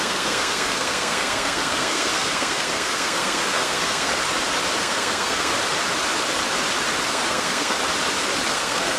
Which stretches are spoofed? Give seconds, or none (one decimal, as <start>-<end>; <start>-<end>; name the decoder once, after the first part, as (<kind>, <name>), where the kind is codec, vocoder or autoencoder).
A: 0.0-4.1 (codec, SNAC); 4.8-5.5; 7.1-7.8; 8.5-9.0